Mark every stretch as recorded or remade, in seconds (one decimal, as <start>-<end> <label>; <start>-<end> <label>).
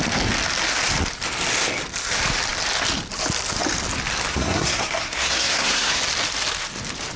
0.0-4.3 recorded; 4.3-6.0 remade; 6.0-7.2 recorded